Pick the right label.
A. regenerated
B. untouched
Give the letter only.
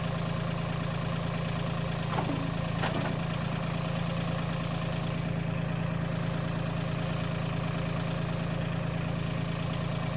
B